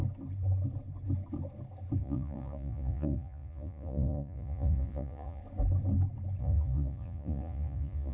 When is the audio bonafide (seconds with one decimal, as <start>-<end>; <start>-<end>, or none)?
0.0-2.0; 5.4-6.4

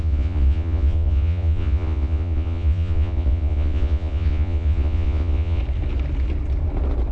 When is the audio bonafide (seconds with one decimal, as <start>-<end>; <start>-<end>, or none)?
5.6-7.1

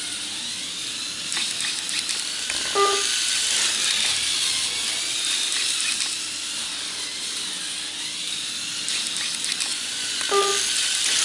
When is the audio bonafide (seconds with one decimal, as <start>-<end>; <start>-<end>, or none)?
0.0-9.7; 10.2-11.2

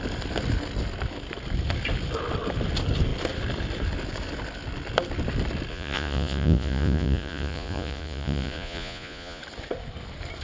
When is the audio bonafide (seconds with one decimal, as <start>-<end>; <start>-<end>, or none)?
0.0-5.7; 9.4-10.4